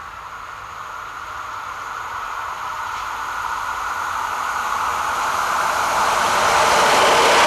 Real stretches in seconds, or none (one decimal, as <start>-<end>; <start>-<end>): 0.0-0.7; 4.9-5.9